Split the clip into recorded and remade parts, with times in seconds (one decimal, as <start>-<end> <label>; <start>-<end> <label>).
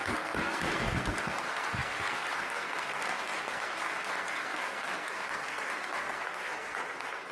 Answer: 0.0-7.3 remade